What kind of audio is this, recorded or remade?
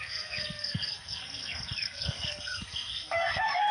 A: remade